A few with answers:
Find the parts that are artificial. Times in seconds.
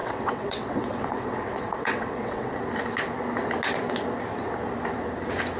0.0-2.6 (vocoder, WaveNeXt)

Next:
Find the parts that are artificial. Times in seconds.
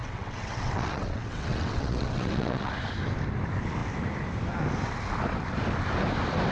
0.0-2.7 (vocoder, WaveNeXt)